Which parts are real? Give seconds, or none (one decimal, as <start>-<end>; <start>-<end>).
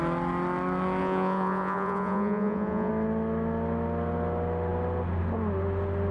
0.0-1.0; 2.9-6.1